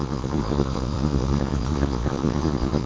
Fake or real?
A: fake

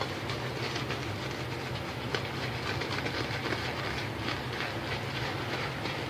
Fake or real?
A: real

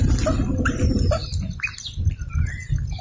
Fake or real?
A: real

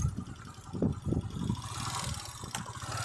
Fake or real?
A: real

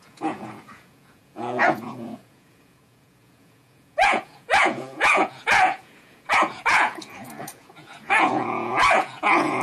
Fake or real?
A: fake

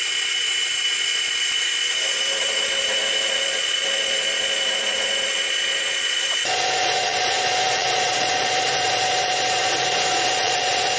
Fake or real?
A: fake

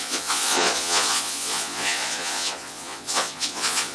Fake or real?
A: fake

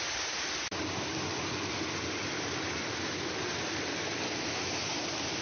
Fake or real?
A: real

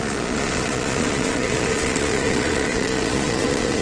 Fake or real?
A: fake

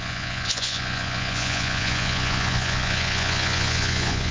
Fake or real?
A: fake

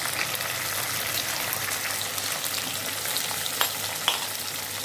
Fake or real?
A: real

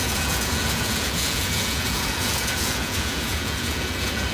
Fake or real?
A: fake